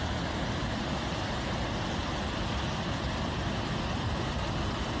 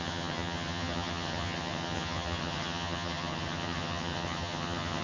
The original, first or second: first